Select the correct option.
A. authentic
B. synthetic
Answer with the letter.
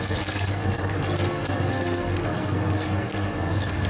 B